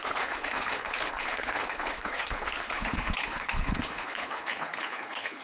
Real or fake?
fake